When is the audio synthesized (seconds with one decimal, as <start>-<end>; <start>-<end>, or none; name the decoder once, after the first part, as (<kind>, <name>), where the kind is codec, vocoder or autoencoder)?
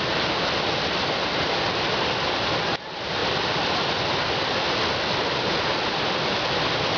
none